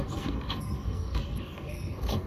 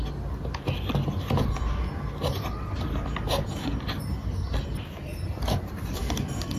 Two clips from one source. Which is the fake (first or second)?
first